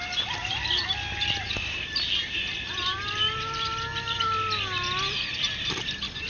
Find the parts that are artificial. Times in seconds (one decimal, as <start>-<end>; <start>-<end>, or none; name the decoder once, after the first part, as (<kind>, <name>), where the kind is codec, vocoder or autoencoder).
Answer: none